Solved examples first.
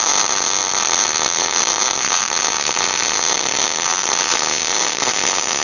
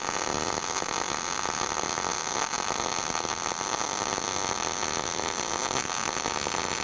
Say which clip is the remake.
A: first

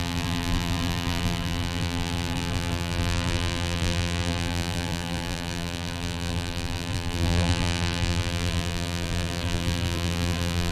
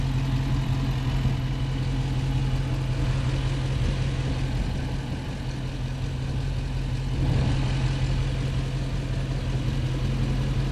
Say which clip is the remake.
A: first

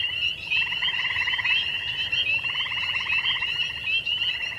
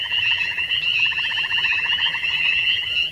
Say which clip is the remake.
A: second